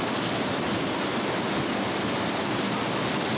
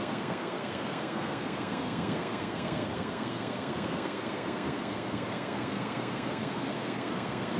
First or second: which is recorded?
first